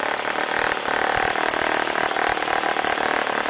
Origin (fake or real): real